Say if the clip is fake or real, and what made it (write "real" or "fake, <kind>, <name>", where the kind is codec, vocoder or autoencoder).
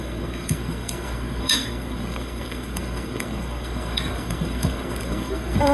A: fake, codec, SNAC